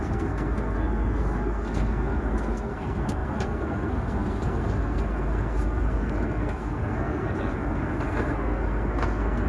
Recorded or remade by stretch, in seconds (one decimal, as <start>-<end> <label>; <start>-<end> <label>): 0.0-9.5 remade